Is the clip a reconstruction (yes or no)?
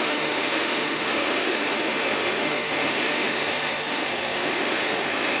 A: yes